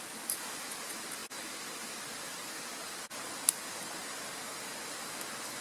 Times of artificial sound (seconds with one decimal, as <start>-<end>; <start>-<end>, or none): none